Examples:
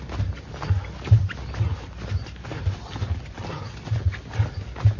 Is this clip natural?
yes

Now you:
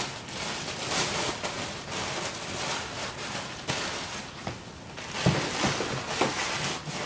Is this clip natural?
yes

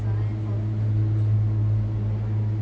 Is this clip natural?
yes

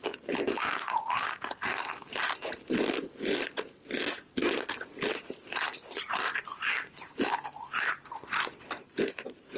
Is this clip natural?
yes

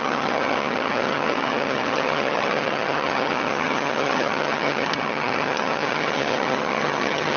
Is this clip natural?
no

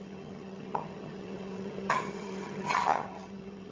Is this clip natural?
no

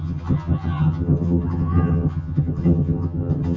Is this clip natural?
no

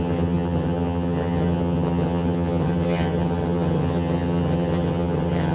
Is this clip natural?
no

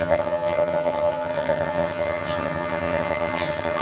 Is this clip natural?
no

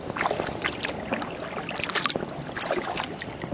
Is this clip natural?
yes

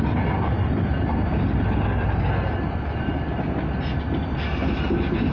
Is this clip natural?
yes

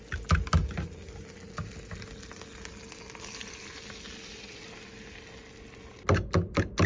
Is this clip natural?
yes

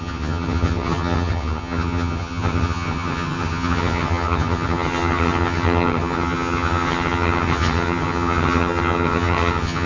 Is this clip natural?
no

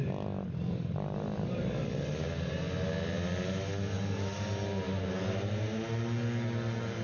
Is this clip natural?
yes